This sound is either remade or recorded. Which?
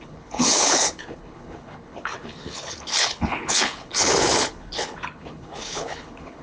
remade